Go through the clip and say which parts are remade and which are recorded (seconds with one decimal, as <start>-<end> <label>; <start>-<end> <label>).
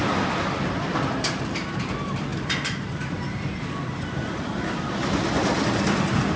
0.0-6.4 recorded